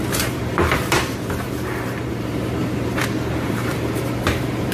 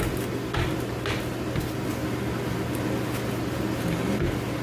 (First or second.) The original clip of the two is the second